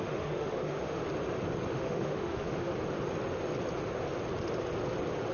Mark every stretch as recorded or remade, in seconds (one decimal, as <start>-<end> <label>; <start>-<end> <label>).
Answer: 0.0-1.0 remade; 1.0-1.7 recorded; 1.7-2.7 remade; 2.7-5.3 recorded